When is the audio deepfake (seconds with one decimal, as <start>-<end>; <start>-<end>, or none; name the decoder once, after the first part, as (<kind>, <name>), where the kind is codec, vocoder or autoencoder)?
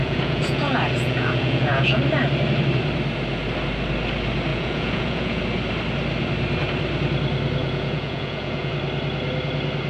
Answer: 0.0-2.0 (vocoder, Vocos); 4.5-5.4; 7.6-8.7